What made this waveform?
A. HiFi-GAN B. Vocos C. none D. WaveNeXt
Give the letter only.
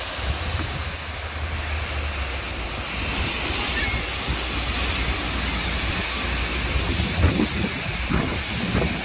C